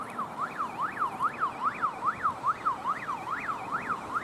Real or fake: real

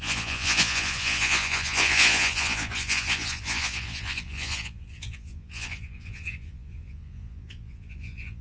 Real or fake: fake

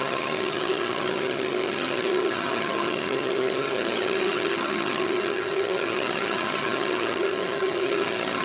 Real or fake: fake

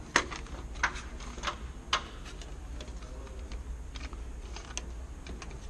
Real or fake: real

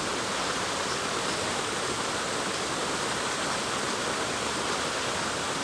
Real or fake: real